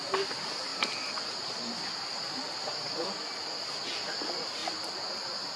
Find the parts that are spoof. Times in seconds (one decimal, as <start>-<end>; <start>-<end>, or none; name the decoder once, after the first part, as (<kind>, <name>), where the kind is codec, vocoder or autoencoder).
none